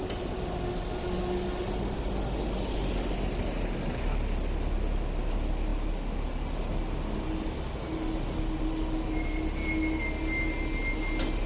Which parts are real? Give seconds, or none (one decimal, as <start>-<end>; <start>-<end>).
0.0-11.5